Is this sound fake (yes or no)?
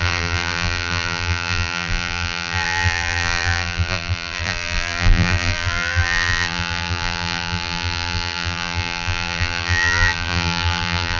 yes